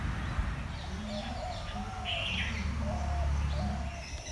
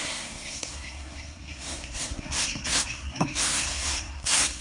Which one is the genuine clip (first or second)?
first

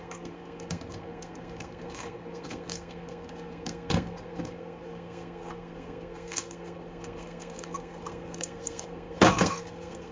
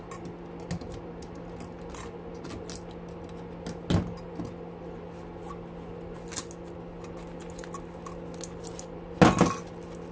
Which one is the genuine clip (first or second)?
second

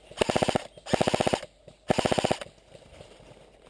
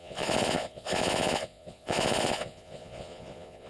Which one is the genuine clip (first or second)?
first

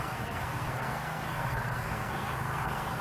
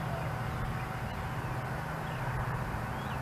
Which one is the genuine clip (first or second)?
second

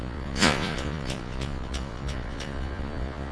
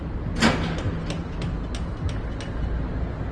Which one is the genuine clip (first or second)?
second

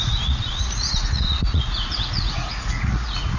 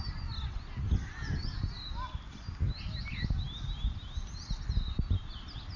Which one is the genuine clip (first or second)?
second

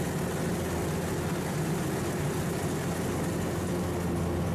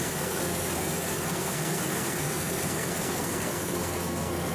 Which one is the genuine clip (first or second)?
first